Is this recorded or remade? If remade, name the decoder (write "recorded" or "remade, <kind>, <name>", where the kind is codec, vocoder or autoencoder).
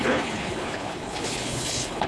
remade, codec, HILCodec